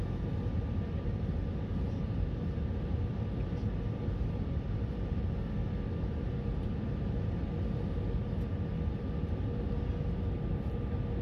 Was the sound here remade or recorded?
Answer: recorded